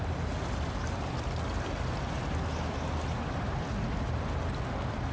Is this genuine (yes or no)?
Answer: yes